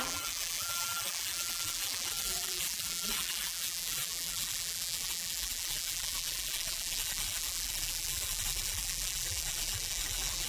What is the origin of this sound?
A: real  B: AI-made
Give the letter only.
B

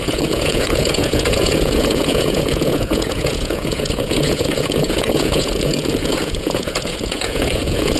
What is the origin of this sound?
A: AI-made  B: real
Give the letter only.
A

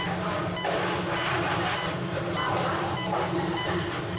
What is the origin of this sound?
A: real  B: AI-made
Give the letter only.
A